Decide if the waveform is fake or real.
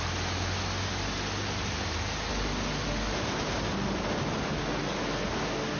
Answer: real